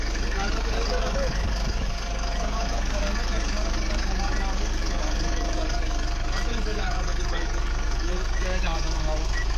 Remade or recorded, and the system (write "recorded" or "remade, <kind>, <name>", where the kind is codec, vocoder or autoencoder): remade, codec, DAC